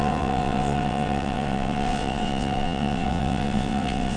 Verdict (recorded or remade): remade